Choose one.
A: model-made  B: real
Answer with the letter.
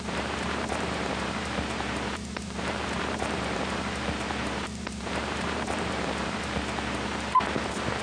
A